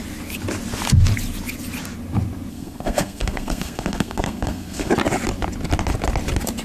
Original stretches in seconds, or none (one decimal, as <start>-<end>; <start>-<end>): 0.0-2.5; 4.9-6.6